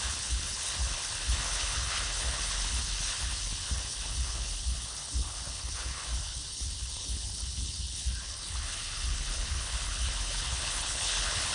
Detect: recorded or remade remade